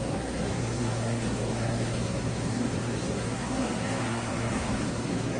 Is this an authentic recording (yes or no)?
no